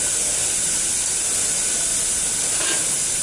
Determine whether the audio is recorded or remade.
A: recorded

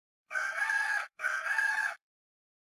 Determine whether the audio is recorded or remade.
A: remade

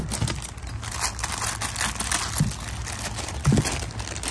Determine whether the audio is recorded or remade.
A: recorded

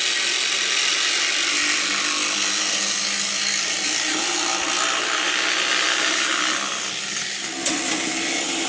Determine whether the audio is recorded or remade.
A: recorded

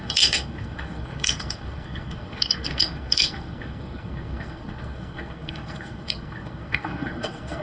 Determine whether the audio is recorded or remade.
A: remade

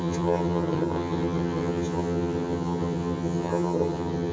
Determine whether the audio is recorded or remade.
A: remade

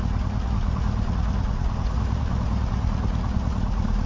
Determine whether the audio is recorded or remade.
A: remade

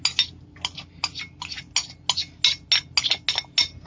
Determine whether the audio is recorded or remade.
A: recorded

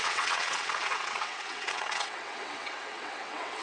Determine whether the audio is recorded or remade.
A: remade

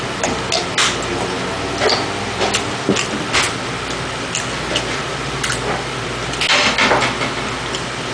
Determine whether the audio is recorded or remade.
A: recorded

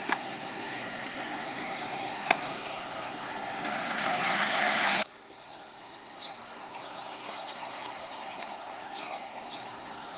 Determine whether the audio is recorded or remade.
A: remade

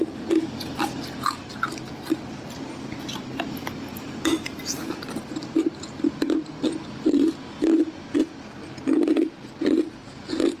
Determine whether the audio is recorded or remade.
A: recorded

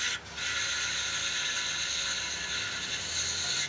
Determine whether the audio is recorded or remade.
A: recorded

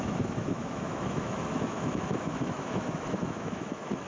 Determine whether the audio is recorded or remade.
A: remade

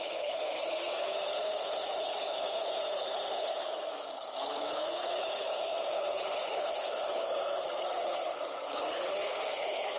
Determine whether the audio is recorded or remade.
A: remade